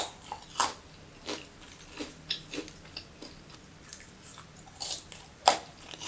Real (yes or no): yes